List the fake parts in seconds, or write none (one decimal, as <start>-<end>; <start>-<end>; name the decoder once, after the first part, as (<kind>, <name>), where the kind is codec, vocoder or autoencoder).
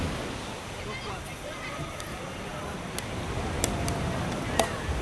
none